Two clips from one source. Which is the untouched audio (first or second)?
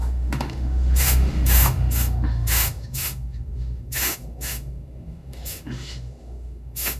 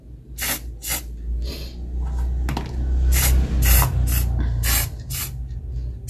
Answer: second